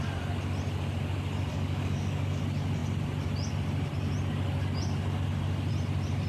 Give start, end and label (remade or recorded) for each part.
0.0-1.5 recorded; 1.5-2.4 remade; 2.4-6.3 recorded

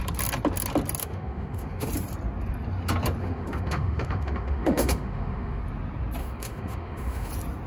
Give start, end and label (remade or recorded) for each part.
0.0-1.0 recorded; 1.0-1.9 remade; 1.9-3.2 recorded; 3.2-5.6 remade; 5.6-6.2 recorded; 6.2-7.3 remade; 7.3-7.7 recorded

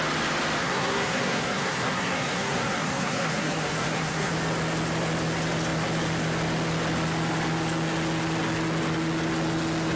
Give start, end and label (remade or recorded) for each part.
0.0-0.6 recorded; 0.6-4.3 remade; 4.3-10.0 recorded